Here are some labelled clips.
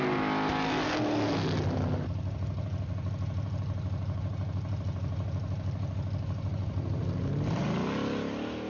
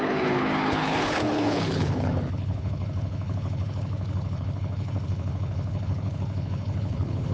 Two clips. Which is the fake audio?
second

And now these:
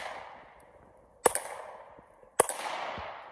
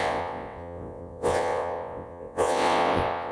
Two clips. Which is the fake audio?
second